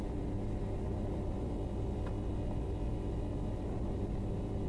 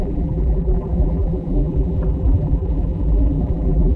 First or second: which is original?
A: first